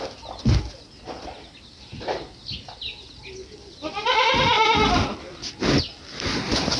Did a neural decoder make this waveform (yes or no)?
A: no